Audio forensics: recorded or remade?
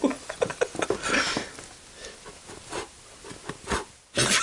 recorded